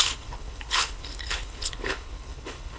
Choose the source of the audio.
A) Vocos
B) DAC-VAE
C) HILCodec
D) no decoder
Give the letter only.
C